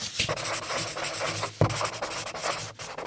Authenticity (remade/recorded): recorded